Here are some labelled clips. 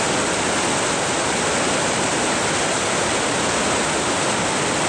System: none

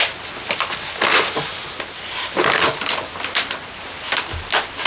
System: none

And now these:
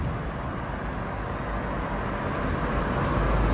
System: none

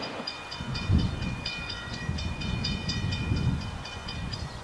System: vocoder, Vocos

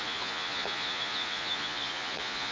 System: vocoder, Vocos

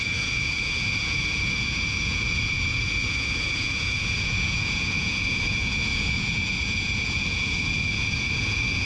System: vocoder, Vocos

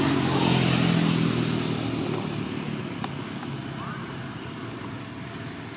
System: none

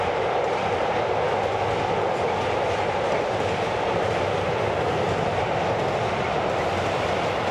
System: none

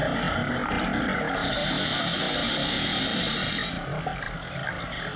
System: none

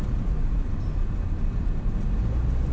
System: none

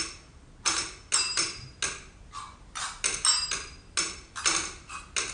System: none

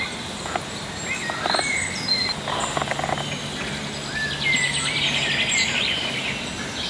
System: none